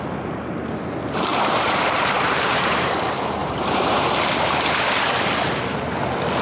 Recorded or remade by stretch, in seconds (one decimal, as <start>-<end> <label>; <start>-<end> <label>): 0.0-1.3 recorded; 1.3-2.9 remade; 2.9-3.4 recorded; 3.4-4.8 remade; 4.8-6.4 recorded